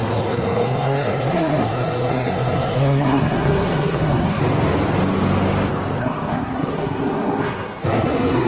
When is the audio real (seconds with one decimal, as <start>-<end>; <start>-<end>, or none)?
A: 4.4-6.0